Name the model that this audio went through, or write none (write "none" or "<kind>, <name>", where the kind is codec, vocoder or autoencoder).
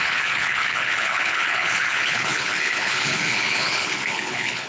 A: codec, HILCodec